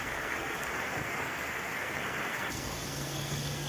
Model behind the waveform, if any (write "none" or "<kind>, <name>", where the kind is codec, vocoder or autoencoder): codec, SNAC